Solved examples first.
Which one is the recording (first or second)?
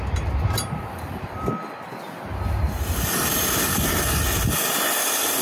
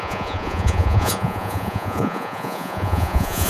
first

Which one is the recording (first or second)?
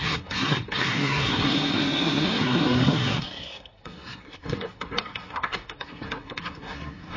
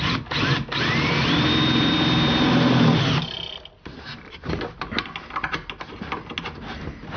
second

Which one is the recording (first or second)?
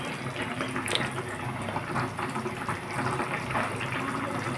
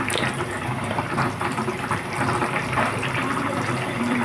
first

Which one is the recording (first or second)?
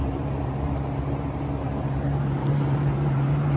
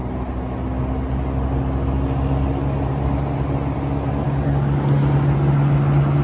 second